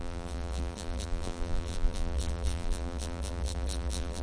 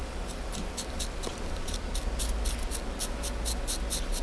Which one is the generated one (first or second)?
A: first